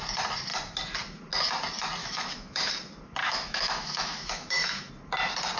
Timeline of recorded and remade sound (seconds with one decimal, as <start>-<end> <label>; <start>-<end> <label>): 0.0-2.0 recorded; 2.0-2.7 remade; 2.7-3.2 recorded; 3.2-4.9 remade; 4.9-5.6 recorded